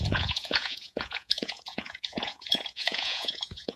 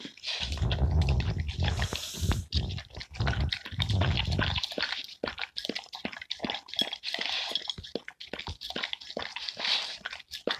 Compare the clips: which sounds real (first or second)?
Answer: second